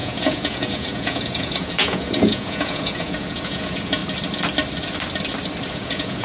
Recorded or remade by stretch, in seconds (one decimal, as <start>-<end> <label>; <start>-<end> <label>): 0.0-4.0 remade; 4.0-5.7 recorded; 5.7-6.2 remade